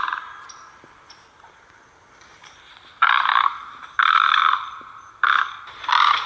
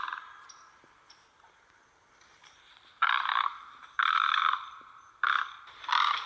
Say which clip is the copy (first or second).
second